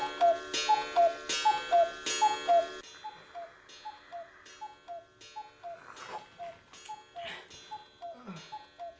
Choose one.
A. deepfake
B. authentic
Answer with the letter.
B